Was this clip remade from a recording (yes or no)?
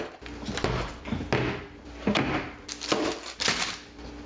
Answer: no